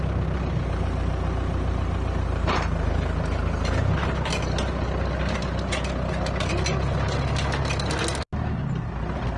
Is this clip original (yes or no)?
yes